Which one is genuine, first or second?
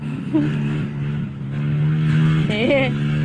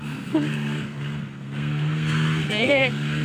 first